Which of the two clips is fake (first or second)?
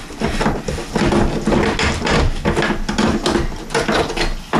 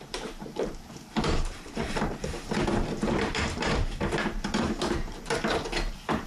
second